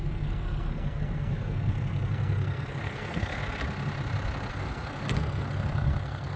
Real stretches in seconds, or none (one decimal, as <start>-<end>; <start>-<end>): 3.4-4.5